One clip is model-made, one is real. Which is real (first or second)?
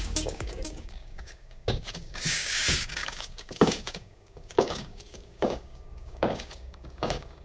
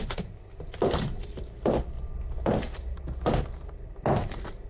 second